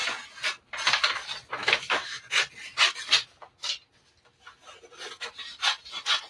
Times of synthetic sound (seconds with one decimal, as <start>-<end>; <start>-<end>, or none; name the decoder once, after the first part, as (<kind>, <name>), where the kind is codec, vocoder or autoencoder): 1.6-2.2 (autoencoder, DAC-VAE)